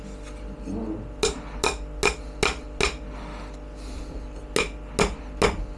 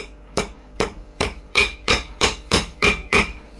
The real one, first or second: first